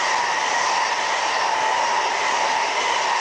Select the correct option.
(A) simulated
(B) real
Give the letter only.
B